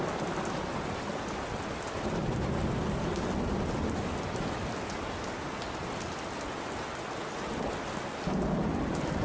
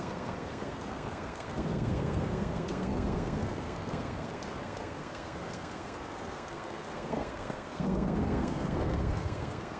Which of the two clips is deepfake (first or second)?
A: second